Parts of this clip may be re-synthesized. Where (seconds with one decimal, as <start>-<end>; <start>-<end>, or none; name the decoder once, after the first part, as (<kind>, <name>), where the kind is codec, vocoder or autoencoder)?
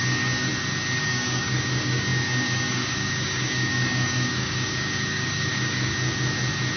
0.0-0.5 (codec, DAC); 1.0-5.9